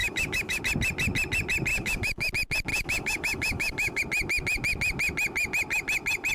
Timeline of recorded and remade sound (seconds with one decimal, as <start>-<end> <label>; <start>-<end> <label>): 0.0-0.6 remade; 0.6-1.7 recorded; 1.7-2.3 remade; 2.3-2.7 recorded; 2.7-4.0 remade; 4.0-6.3 recorded